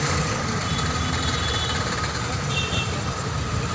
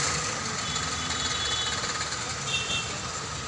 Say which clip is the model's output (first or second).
first